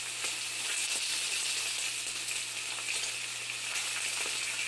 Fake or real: real